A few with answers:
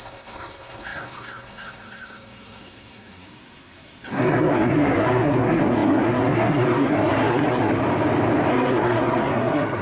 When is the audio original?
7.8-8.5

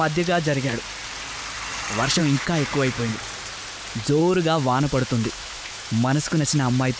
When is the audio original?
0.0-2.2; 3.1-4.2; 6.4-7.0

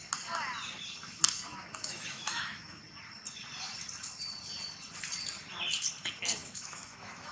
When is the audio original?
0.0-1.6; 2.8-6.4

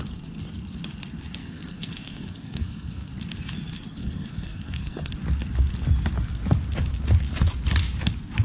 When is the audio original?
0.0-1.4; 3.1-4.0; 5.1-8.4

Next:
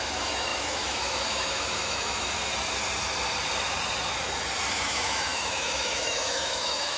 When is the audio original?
2.5-4.7

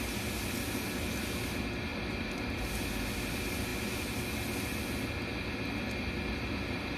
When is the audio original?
0.0-7.0

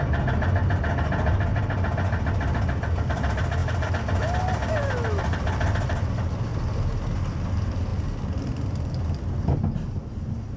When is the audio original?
0.0-10.6